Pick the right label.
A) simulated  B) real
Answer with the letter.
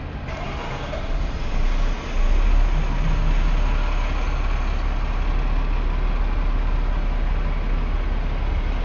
B